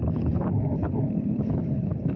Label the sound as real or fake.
fake